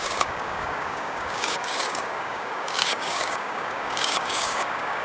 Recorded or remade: remade